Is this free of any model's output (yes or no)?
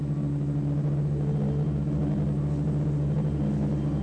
yes